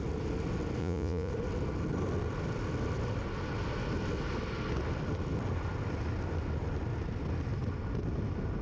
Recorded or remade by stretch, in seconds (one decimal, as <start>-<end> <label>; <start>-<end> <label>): 0.0-0.8 recorded; 0.8-1.3 remade; 1.3-8.6 recorded